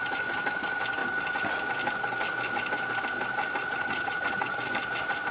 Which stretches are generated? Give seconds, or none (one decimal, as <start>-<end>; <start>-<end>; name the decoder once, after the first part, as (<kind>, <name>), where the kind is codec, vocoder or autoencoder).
3.8-4.6 (vocoder, HiFi-GAN)